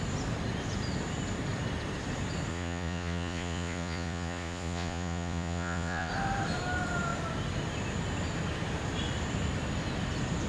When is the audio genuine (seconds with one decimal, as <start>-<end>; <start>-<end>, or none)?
0.0-2.5; 6.1-10.5